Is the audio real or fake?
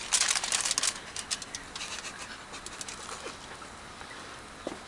real